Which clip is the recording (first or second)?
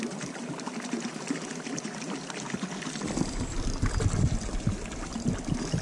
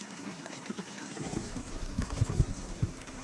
first